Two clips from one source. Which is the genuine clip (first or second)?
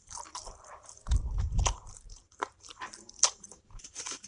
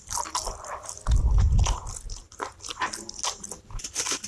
second